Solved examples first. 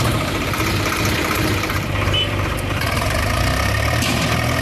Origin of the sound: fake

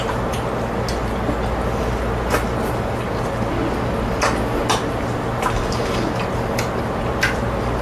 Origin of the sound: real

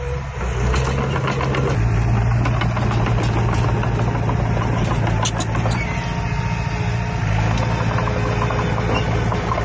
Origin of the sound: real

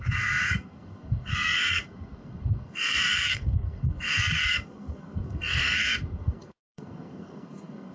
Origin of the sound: fake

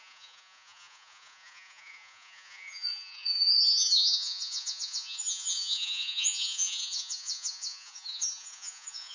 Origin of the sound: fake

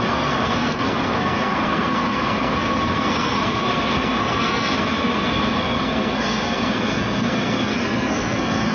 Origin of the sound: fake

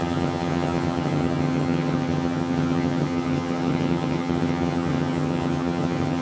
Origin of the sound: fake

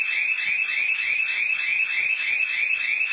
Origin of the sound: real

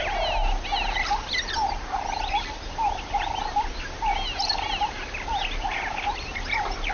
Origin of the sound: real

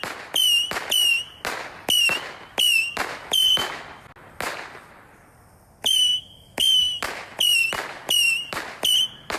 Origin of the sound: real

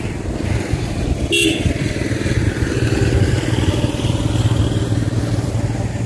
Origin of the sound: real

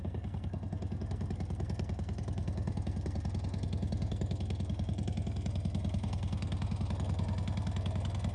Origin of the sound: fake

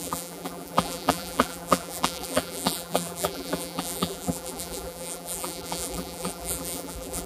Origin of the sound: fake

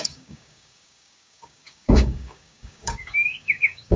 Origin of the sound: fake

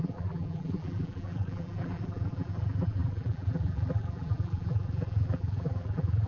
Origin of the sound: fake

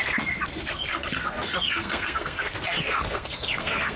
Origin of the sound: fake